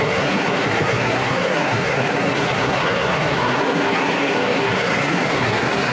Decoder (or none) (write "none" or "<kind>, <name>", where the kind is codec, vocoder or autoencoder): codec, SNAC